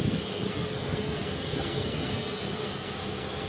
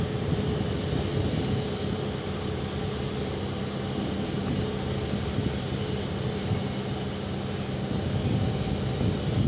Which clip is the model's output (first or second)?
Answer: first